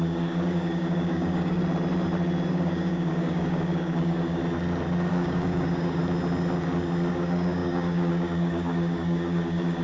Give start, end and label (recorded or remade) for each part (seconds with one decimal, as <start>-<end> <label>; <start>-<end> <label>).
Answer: 0.0-1.6 remade; 1.6-2.5 recorded; 2.5-4.4 remade; 4.4-5.1 recorded; 5.1-6.0 remade; 6.0-7.1 recorded; 7.1-9.8 remade